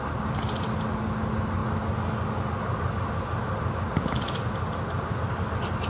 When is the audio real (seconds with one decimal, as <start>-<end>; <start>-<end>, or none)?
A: 0.0-5.9